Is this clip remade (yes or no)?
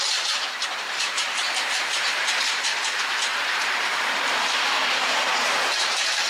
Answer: yes